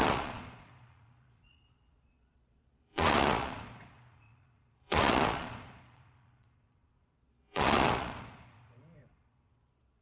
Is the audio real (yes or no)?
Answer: no